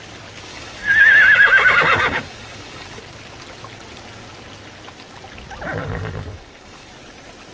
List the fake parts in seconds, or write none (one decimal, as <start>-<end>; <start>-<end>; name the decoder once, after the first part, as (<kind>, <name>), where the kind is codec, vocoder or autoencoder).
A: 0.5-3.0 (codec, DAC); 5.8-6.9